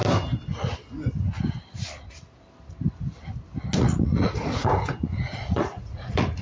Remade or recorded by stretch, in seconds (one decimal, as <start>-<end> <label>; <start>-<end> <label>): 0.0-3.8 recorded; 3.8-6.4 remade